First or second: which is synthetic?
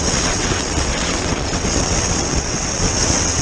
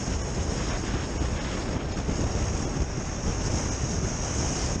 first